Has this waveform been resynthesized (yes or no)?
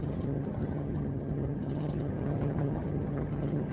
yes